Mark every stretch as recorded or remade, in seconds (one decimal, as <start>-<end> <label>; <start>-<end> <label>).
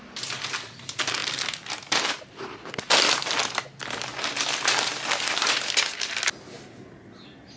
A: 0.0-7.6 recorded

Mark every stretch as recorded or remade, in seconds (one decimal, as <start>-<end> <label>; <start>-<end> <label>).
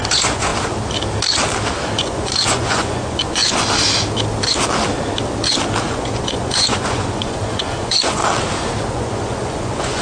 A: 0.0-0.5 remade; 0.5-2.0 recorded; 2.0-3.4 remade; 3.4-5.8 recorded; 5.8-8.2 remade; 8.2-8.9 recorded; 8.9-10.0 remade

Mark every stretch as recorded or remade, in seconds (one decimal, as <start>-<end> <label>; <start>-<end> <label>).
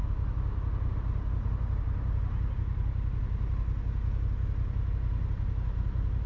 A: 0.0-6.3 recorded